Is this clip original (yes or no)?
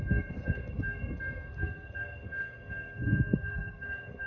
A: no